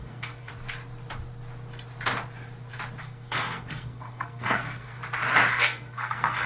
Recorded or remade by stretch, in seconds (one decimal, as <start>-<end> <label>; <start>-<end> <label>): 0.0-0.5 remade; 0.5-3.0 recorded; 3.0-5.0 remade; 5.0-5.5 recorded; 5.5-6.5 remade